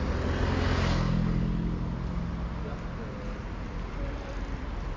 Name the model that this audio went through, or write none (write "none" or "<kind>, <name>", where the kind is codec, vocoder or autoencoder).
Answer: none